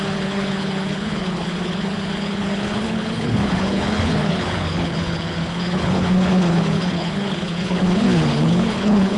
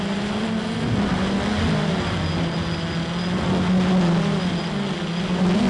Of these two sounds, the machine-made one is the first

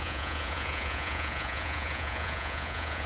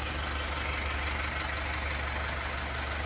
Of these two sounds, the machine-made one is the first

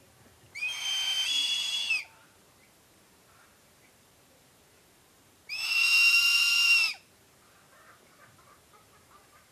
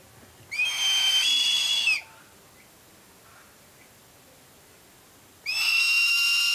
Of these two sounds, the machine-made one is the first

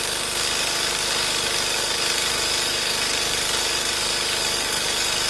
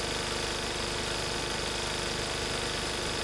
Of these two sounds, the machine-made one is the first